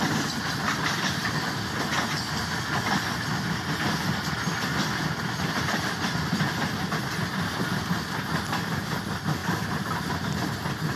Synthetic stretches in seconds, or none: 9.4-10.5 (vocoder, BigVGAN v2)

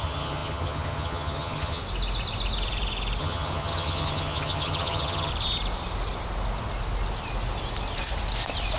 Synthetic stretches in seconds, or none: 0.0-1.8 (vocoder, HiFi-GAN); 3.2-5.3

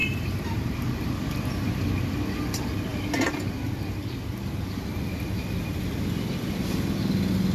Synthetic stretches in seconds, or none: 0.0-0.8 (vocoder, BigVGAN v2)

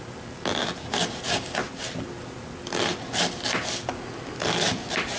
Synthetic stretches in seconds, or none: none